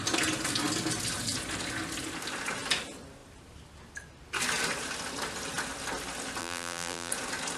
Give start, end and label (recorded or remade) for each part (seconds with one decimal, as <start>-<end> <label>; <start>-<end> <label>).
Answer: 0.0-6.4 recorded; 6.4-7.1 remade; 7.1-7.6 recorded